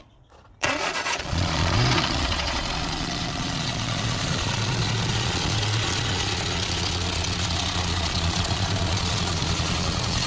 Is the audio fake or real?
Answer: fake